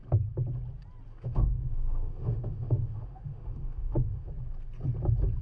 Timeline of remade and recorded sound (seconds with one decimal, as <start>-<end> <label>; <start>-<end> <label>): 0.0-1.1 recorded; 1.1-4.3 remade; 4.3-5.4 recorded